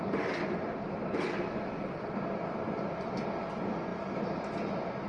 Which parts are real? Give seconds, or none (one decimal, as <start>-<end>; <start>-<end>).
0.0-5.1